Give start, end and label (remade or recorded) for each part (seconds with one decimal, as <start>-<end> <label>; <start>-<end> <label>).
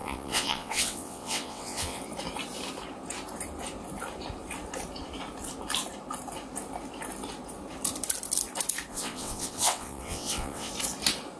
0.0-2.0 remade; 2.0-8.9 recorded; 8.9-10.7 remade; 10.7-11.4 recorded